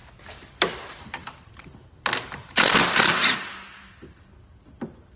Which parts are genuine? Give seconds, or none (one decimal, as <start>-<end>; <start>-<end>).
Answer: 0.0-5.2

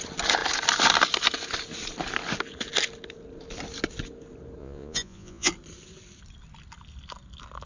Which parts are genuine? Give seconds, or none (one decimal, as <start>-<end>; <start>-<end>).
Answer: 0.0-4.6; 5.5-7.7

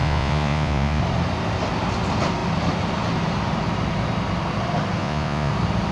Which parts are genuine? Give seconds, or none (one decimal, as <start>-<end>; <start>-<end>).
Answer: 1.0-5.0; 5.5-5.9

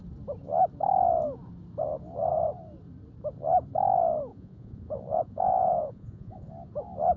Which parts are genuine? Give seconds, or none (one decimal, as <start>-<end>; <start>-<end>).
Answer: 0.0-4.3; 6.5-7.2

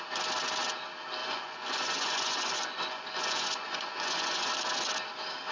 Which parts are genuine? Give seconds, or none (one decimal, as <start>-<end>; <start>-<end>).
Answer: 0.0-1.2; 4.5-5.5

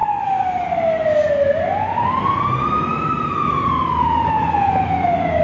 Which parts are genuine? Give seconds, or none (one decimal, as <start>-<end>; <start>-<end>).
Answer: 0.0-5.4

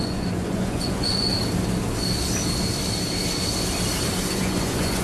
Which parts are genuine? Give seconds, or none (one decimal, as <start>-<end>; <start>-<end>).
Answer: 1.3-4.3